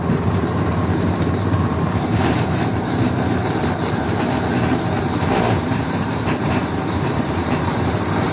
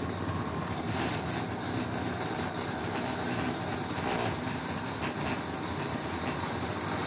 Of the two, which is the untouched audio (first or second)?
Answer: second